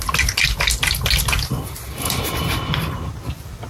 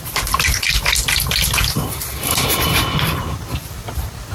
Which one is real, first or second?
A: first